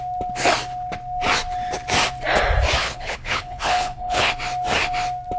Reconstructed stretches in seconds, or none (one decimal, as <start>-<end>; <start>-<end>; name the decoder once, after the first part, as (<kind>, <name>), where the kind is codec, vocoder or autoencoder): 2.8-4.3 (codec, HILCodec)